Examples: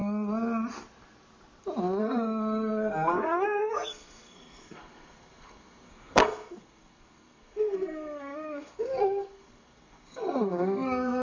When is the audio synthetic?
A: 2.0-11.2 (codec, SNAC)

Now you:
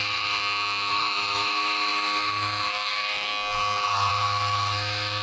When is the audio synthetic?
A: 0.0-0.4 (autoencoder, DAC-VAE); 0.9-3.3; 4.1-5.2